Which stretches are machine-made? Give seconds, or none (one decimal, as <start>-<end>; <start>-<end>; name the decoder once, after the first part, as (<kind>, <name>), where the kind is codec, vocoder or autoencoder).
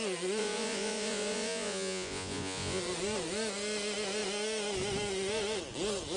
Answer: 0.4-2.8 (vocoder, Vocos)